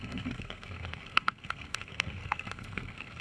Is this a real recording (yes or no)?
no